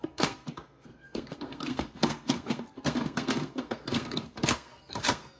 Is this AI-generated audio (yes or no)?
yes